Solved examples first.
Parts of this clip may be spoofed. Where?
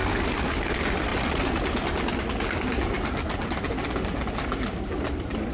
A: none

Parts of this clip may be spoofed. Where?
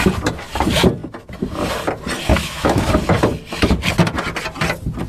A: 2.3-2.9 (autoencoder, DAC-VAE)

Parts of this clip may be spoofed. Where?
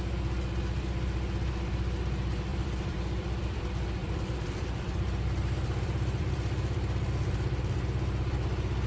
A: 2.5-3.6 (vocoder, BigVGAN v2); 4.0-7.6